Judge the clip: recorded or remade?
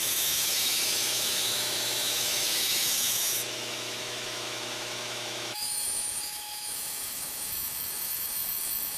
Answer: remade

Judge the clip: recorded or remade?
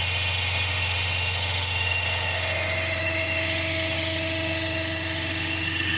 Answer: remade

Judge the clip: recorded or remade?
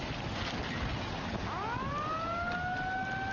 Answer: recorded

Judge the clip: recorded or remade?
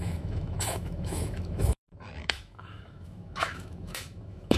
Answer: remade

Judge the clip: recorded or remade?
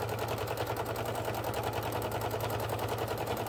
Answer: recorded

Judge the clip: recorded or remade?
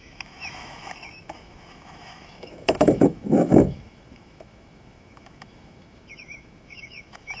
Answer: remade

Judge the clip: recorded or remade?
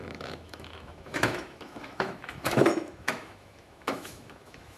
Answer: remade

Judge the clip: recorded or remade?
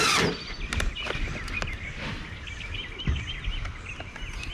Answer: recorded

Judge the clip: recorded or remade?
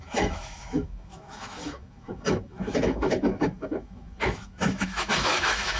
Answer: remade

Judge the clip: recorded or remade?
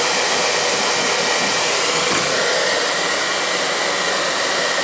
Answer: recorded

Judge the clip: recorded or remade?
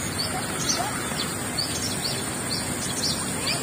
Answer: recorded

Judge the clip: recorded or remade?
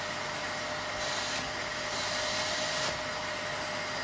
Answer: recorded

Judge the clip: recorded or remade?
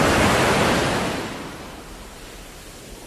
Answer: recorded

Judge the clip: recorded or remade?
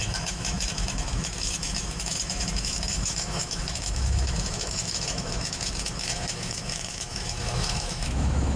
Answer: remade